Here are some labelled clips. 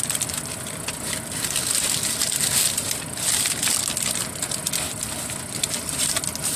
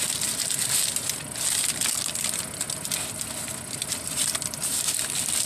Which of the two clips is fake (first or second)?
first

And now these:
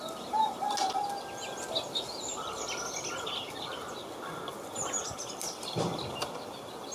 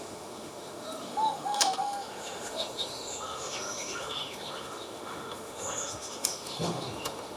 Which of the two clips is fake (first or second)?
second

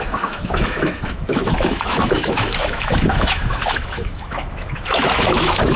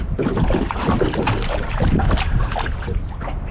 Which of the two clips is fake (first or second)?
first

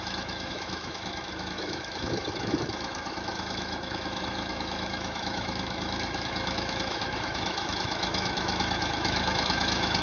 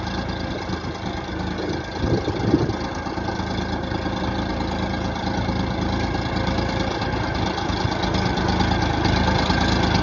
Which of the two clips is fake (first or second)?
first